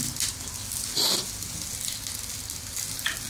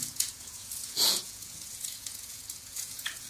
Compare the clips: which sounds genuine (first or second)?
first